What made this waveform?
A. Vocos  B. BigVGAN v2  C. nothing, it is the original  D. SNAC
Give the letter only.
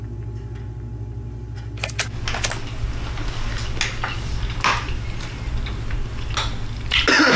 C